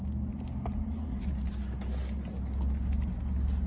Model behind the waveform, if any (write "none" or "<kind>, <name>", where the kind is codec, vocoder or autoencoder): none